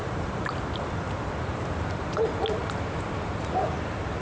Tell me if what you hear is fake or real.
real